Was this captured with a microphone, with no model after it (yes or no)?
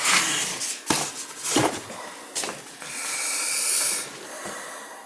yes